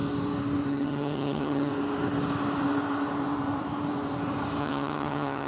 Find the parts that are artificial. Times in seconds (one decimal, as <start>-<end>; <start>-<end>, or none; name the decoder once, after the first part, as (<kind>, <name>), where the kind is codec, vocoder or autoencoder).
0.7-1.7 (vocoder, HiFi-GAN); 4.6-5.5